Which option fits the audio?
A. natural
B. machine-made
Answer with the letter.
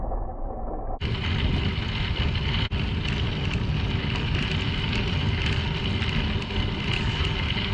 A